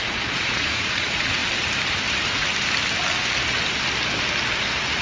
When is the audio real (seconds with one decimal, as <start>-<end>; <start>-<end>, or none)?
1.4-2.1; 2.5-5.0